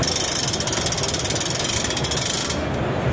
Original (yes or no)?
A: yes